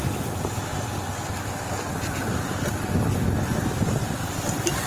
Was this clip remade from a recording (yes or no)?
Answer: no